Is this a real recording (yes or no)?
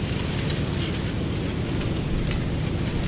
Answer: yes